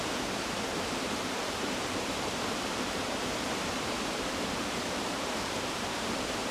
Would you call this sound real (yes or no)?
no